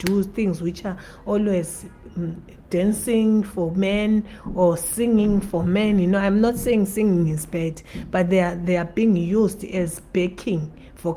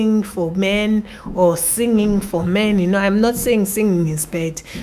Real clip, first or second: first